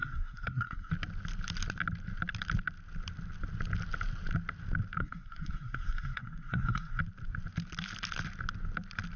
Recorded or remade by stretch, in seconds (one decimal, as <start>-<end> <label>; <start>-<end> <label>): 0.0-0.9 remade; 0.9-5.0 recorded; 5.0-7.0 remade; 7.0-9.2 recorded